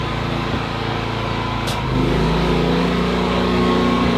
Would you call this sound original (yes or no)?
no